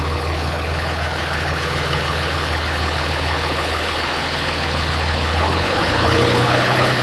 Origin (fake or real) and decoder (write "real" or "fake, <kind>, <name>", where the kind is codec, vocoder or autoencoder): fake, codec, HILCodec